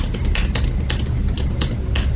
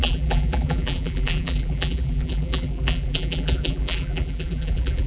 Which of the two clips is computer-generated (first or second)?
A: second